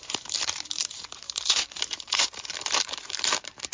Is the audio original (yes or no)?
no